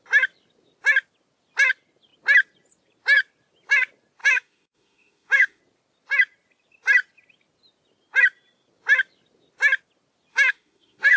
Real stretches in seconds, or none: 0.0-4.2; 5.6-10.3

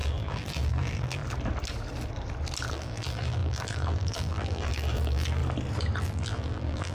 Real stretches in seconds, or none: 1.2-2.7; 5.4-6.0

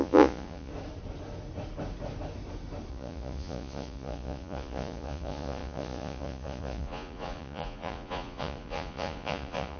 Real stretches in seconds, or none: 0.7-2.9

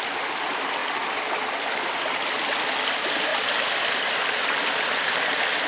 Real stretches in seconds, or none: 0.0-5.7

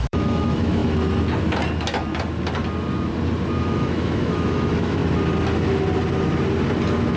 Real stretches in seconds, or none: 0.8-3.6; 5.0-7.2

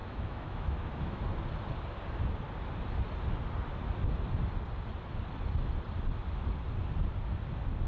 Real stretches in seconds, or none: 1.2-7.9